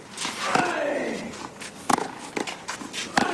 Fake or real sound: real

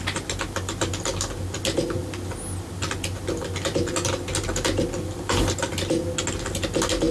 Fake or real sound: real